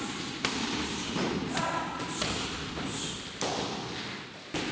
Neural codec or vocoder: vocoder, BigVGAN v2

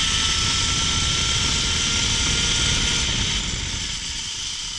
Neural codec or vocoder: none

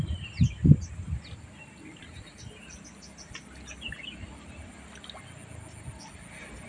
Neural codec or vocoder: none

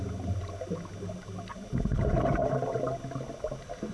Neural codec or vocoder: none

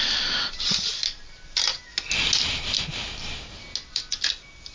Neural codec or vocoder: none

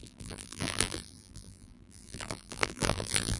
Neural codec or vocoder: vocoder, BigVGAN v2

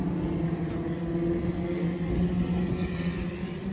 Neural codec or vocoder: none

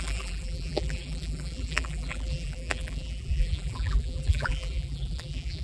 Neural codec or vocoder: vocoder, BigVGAN v2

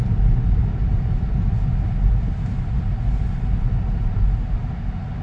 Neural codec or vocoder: none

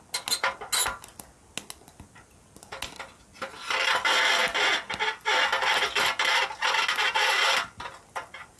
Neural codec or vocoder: none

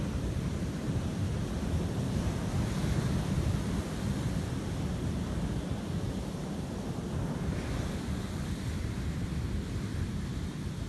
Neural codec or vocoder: none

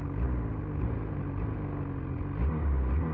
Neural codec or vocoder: none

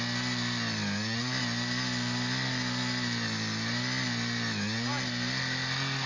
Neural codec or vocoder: none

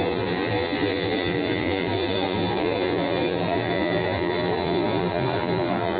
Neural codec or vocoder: vocoder, BigVGAN v2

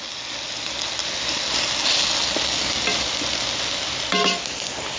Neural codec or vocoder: none